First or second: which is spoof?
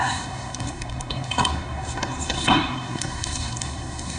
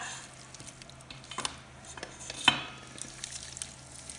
first